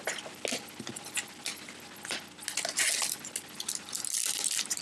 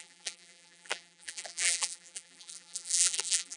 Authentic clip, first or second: first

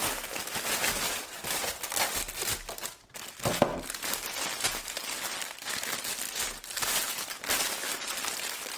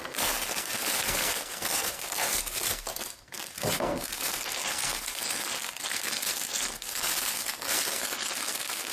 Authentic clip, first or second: first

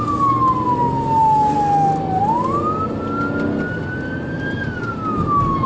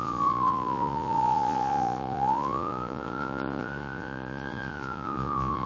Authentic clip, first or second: first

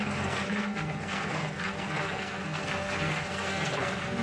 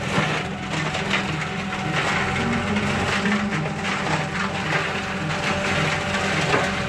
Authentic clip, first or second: second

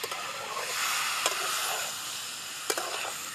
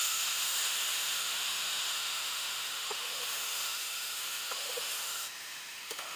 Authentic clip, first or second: first